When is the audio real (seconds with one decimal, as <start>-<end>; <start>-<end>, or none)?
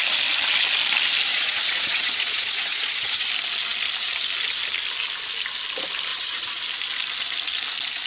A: 0.0-1.3; 3.3-6.1; 6.6-8.1